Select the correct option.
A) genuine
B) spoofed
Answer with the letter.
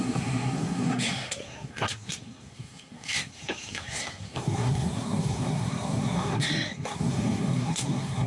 B